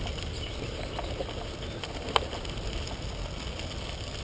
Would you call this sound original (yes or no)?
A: yes